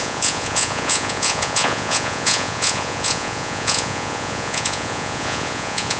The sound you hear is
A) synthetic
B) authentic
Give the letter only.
A